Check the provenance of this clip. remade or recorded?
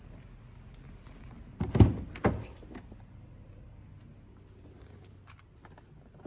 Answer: recorded